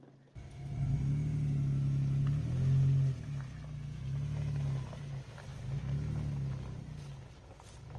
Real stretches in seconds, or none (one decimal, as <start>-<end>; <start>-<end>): 0.0-8.0